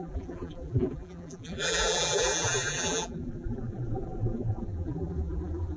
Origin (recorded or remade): remade